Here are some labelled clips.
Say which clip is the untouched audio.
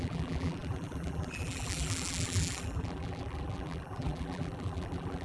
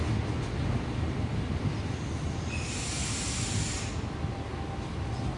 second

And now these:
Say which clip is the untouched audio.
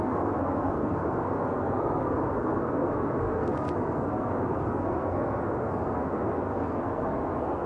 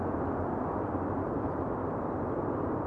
second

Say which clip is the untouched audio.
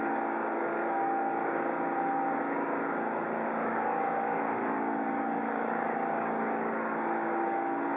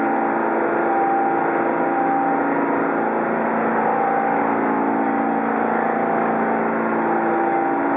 second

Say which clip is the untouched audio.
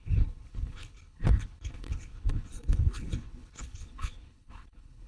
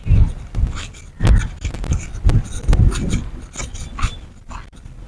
second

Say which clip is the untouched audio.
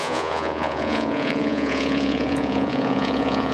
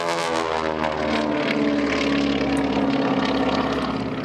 second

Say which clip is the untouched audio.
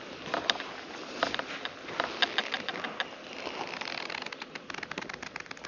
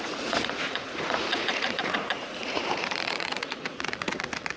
first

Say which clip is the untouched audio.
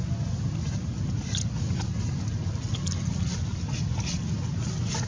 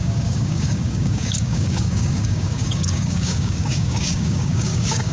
first